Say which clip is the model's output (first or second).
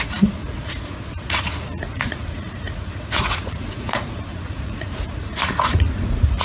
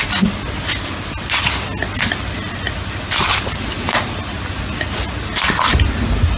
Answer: first